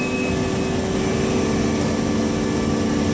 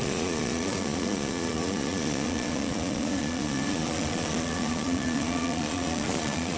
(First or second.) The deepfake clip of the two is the second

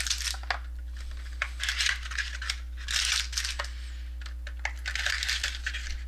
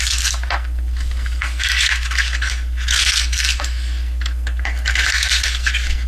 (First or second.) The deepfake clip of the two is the second